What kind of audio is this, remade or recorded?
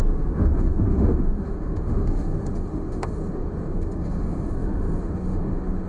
remade